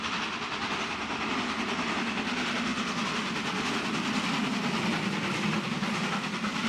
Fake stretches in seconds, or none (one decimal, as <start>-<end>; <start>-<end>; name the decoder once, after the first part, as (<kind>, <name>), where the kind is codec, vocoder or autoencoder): none